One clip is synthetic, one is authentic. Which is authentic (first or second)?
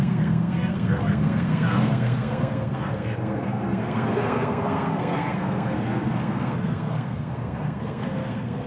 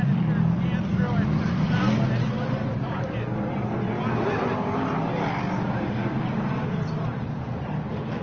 second